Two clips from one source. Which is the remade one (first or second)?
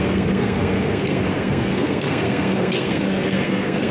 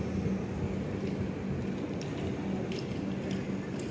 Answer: first